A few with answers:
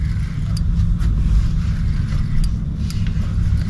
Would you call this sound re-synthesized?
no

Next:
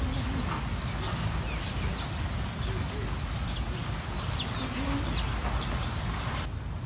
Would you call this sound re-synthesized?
no